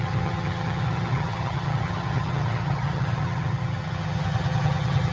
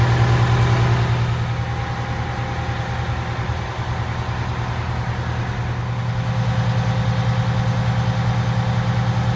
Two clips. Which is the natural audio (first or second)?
second